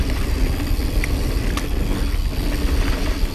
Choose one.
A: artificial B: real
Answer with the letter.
B